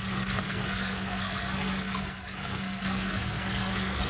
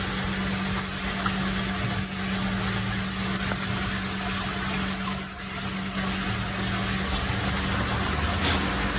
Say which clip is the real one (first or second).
second